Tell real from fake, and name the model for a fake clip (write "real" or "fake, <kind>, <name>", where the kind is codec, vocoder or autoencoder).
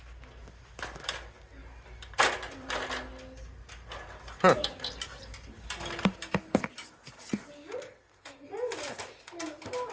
real